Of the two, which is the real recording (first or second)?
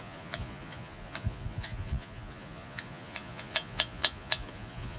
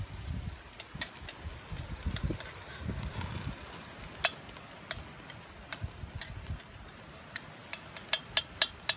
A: second